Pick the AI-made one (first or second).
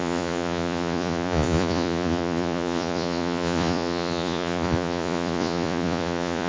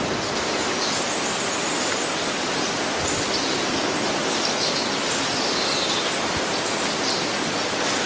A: first